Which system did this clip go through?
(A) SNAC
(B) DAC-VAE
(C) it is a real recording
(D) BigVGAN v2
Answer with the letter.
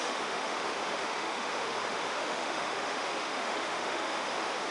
B